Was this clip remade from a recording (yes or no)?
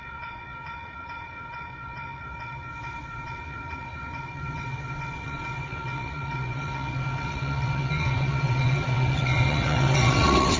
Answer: yes